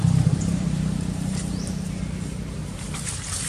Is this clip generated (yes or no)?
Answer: yes